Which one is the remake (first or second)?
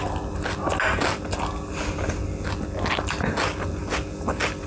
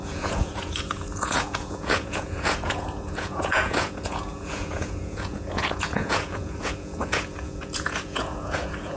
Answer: second